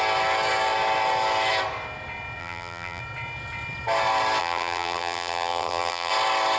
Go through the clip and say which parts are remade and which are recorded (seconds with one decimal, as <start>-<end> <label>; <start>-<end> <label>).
0.0-2.4 recorded; 2.4-3.0 remade; 3.0-4.4 recorded; 4.4-6.1 remade; 6.1-6.6 recorded